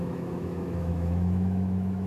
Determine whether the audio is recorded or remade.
remade